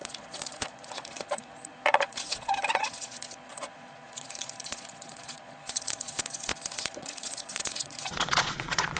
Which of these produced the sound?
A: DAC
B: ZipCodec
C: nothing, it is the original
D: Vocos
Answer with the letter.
D